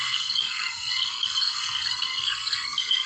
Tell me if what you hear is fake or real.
fake